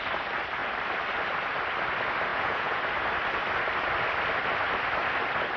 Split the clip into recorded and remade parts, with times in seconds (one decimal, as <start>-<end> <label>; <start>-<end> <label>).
0.0-2.3 recorded; 2.3-2.8 remade; 2.8-5.6 recorded